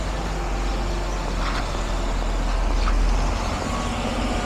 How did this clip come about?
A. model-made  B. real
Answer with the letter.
B